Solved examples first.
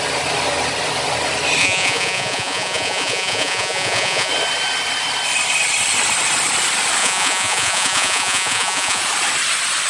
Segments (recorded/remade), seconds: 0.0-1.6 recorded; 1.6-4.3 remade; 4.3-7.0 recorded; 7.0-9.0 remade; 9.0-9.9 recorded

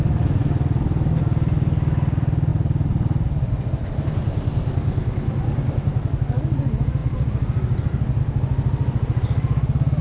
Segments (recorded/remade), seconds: 0.0-10.0 recorded

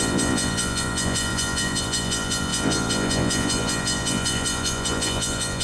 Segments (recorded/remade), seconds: 0.0-5.6 remade

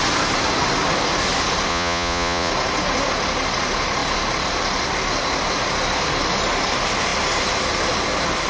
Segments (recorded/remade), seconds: 0.0-1.7 recorded; 1.7-2.5 remade; 2.5-8.5 recorded